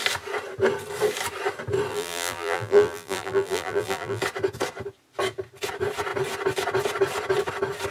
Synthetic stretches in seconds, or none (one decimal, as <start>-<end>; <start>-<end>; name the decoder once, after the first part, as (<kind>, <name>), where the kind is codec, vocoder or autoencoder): 1.9-4.2 (vocoder, BigVGAN v2)